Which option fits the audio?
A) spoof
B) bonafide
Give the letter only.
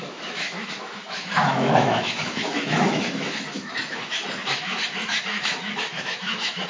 A